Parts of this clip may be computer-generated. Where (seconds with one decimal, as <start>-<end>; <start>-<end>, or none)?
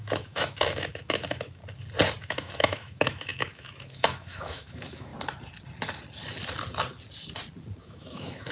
0.0-1.6; 2.2-5.1; 7.8-8.5